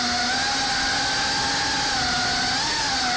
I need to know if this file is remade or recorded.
recorded